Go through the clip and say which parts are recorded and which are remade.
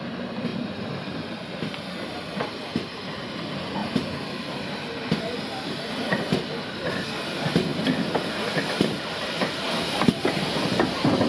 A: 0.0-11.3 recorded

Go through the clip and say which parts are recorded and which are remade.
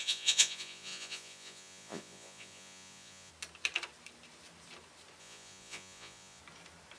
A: 0.0-3.3 remade; 3.3-5.2 recorded; 5.2-6.4 remade; 6.4-7.0 recorded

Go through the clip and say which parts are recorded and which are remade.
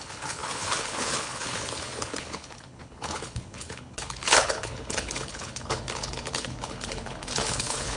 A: 0.0-8.0 remade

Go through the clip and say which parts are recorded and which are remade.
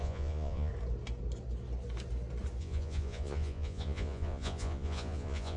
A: 0.0-0.7 remade; 0.7-2.6 recorded; 2.6-5.6 remade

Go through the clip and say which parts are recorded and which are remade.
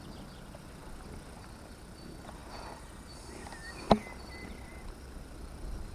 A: 0.0-5.9 recorded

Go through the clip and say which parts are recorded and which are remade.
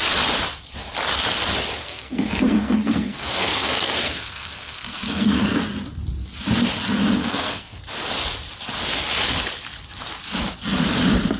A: 0.0-1.8 recorded; 1.8-5.6 remade; 5.6-7.2 recorded; 7.2-7.8 remade; 7.8-11.4 recorded